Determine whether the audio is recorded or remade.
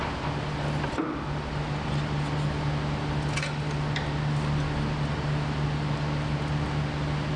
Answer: recorded